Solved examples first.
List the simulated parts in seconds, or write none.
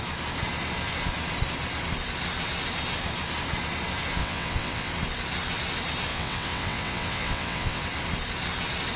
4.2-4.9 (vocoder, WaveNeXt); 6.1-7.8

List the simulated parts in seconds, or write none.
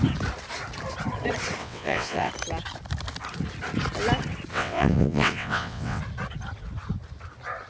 1.6-2.3 (vocoder, WaveNeXt); 4.5-6.0